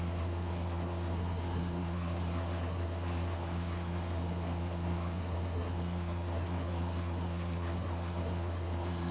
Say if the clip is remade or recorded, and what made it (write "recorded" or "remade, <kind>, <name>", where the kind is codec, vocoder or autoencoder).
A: remade, codec, SNAC